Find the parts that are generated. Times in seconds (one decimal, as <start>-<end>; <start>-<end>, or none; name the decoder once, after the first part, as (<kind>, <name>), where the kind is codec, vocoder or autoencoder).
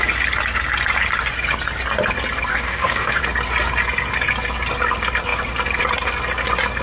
2.5-3.2 (codec, DAC)